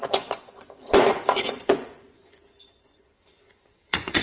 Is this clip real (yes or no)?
no